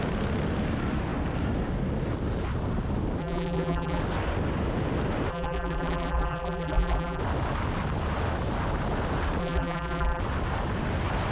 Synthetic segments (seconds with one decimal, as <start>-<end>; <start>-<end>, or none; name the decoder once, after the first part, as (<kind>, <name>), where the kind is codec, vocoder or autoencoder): 3.2-4.0 (vocoder, BigVGAN v2); 5.3-7.2; 9.4-10.2

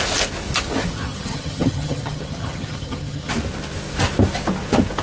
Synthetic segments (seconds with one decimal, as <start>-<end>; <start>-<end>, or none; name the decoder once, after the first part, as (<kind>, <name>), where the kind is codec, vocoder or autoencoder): 0.9-3.3 (vocoder, HiFi-GAN)

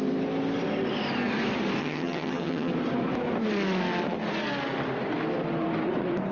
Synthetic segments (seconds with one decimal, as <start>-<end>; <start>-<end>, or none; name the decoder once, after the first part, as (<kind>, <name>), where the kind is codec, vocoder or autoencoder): 1.8-2.7 (vocoder, HiFi-GAN)

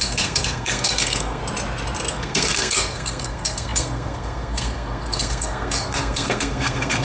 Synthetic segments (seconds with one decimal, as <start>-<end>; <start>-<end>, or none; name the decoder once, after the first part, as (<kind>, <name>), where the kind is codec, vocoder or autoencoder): 0.0-1.4 (codec, SNAC); 2.1-7.0

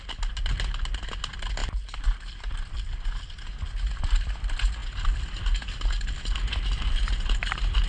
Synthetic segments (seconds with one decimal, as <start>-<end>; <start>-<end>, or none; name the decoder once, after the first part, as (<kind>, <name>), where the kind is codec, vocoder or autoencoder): none

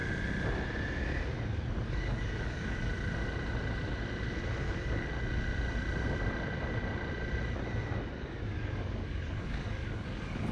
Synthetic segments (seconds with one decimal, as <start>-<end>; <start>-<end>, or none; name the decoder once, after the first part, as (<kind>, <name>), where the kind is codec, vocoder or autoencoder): 1.9-2.9 (codec, DAC); 4.6-5.1; 8.1-10.5

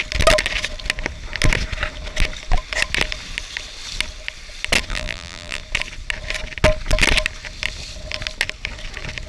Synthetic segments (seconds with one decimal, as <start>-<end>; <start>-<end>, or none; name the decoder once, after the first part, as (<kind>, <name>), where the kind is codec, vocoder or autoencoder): 4.9-5.6 (vocoder, BigVGAN v2)